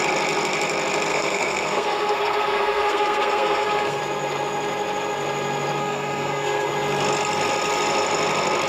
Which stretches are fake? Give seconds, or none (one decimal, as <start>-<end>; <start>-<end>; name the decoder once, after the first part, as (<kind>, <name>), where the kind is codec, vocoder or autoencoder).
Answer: 1.1-4.0 (codec, SNAC); 5.8-6.7